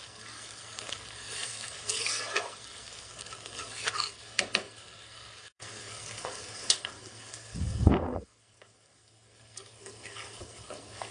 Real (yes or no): no